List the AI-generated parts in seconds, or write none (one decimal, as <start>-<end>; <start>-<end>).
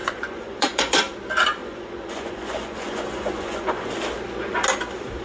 0.0-0.8; 1.6-3.9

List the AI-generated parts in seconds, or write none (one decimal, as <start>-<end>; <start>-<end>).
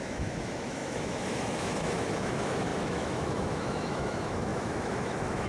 0.0-5.5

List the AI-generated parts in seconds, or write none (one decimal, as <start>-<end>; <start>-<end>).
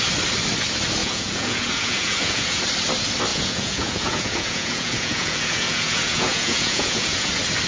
1.0-2.6; 3.3-7.3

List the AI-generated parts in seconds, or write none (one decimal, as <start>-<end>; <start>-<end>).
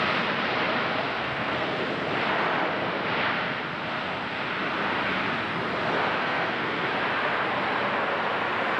1.2-1.8; 6.2-6.9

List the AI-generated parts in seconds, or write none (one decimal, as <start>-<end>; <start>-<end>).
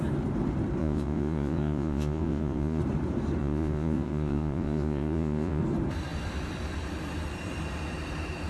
0.8-2.8; 3.4-5.6